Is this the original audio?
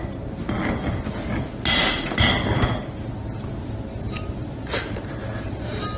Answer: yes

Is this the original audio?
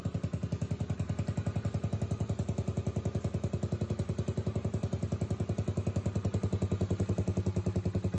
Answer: yes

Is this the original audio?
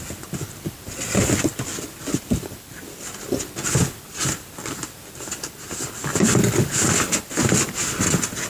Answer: yes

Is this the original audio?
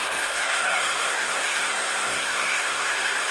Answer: no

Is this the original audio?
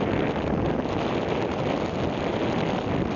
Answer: yes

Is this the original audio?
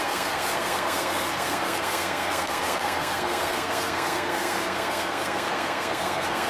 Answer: no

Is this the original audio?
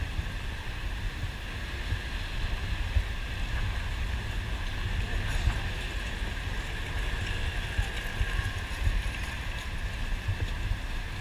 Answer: yes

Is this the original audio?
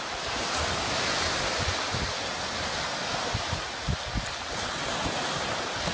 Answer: yes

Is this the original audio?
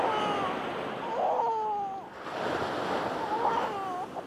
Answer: yes